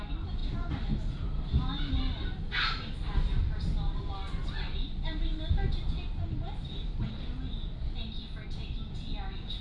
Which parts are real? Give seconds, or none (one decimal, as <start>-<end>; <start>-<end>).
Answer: 0.0-9.6